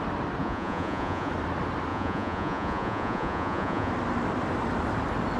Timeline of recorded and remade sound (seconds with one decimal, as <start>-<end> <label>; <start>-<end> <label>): 0.0-0.4 recorded; 0.4-1.3 remade; 1.3-1.9 recorded; 1.9-3.9 remade; 3.9-5.4 recorded

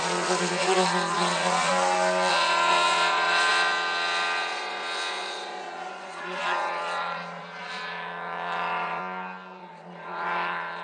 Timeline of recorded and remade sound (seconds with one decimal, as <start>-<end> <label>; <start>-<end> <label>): 0.0-1.7 remade; 1.7-2.3 recorded; 2.3-9.0 remade; 9.0-9.6 recorded; 9.6-10.8 remade

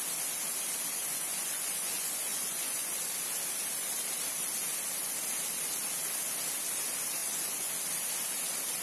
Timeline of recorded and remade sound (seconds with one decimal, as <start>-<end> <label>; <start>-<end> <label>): 0.0-0.9 recorded; 0.9-3.0 remade; 3.0-7.2 recorded; 7.2-7.7 remade; 7.7-8.8 recorded

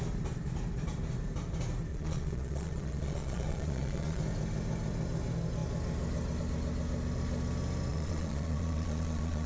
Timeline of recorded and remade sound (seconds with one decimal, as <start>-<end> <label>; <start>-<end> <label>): 0.0-1.9 recorded; 1.9-4.2 remade; 4.2-7.9 recorded; 7.9-9.5 remade

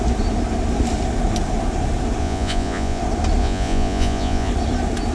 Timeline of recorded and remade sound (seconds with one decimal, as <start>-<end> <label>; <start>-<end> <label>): 0.0-2.2 recorded; 2.2-3.0 remade; 3.0-3.4 recorded; 3.4-4.5 remade; 4.5-5.1 recorded

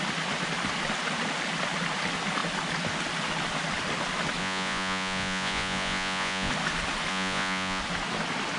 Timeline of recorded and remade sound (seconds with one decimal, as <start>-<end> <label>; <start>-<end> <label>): 0.0-4.4 recorded; 4.4-6.5 remade; 6.5-7.1 recorded; 7.1-7.8 remade; 7.8-8.6 recorded

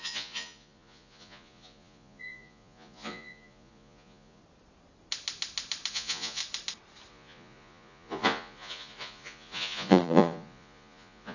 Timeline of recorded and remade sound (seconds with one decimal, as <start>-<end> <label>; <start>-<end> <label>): 0.0-4.4 remade; 4.4-5.9 recorded; 5.9-6.4 remade; 6.4-7.1 recorded; 7.1-11.3 remade

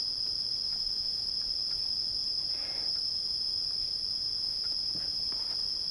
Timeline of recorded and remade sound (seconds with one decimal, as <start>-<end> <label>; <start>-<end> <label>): 0.0-0.7 recorded; 0.7-1.3 remade; 1.3-5.9 recorded